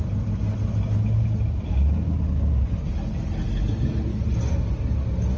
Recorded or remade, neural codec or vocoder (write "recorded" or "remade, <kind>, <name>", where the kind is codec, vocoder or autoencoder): recorded